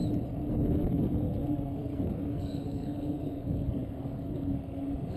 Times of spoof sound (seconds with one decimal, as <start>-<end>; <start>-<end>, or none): 0.5-5.2